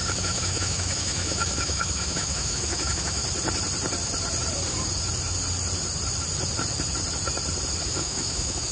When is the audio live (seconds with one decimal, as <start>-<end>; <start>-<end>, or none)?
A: 3.2-7.9